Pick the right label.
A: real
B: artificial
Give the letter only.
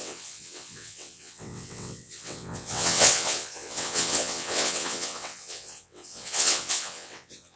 B